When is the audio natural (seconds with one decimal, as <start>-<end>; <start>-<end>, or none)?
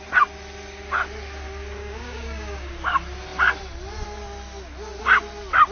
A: 0.0-1.8; 2.7-5.7